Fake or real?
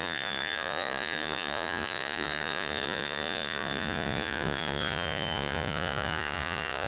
fake